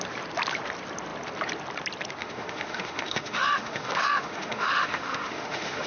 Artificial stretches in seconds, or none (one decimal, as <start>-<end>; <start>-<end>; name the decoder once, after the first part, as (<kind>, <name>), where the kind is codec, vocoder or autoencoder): 2.2-5.9 (autoencoder, DAC-VAE)